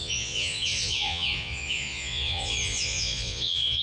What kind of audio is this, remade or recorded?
remade